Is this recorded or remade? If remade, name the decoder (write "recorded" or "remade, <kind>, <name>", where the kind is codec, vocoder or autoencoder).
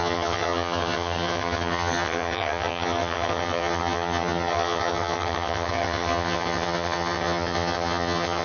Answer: remade, vocoder, HiFi-GAN